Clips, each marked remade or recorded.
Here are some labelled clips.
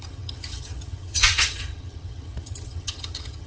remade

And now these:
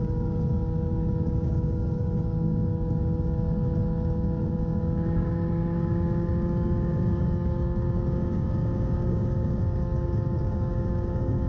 remade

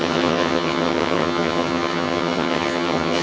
remade